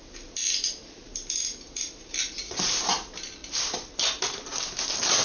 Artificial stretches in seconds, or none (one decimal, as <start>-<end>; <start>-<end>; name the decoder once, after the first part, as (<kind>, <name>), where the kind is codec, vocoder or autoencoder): none